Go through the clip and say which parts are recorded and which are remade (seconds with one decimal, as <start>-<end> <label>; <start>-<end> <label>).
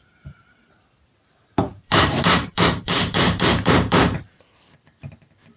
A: 0.0-1.7 recorded; 1.7-5.1 remade; 5.1-5.6 recorded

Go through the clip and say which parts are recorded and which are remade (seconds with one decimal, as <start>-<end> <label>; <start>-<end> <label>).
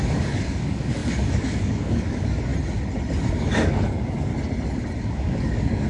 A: 0.0-2.5 remade; 2.5-3.3 recorded; 3.3-4.3 remade; 4.3-5.0 recorded; 5.0-5.9 remade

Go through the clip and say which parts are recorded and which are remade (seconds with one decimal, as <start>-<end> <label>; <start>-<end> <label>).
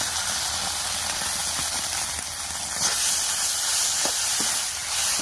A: 0.0-5.2 recorded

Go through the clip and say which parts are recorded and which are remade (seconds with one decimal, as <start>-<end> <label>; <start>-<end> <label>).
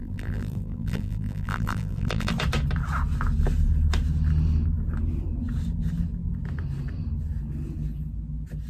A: 0.0-2.3 remade; 2.3-8.7 recorded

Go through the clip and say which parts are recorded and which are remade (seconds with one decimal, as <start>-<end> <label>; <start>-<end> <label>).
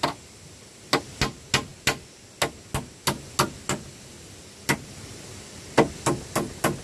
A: 0.0-6.8 recorded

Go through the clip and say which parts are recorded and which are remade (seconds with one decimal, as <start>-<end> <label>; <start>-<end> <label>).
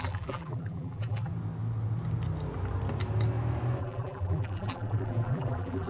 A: 0.0-1.3 remade; 1.3-3.8 recorded; 3.8-5.9 remade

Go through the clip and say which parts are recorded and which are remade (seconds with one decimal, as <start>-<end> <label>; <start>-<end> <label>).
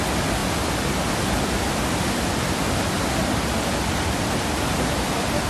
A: 0.0-5.5 recorded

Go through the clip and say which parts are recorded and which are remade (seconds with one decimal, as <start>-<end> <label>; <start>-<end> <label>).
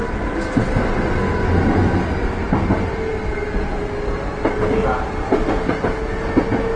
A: 0.0-6.8 recorded